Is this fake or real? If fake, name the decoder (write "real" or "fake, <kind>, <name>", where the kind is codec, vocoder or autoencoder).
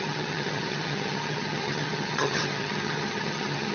fake, vocoder, HiFi-GAN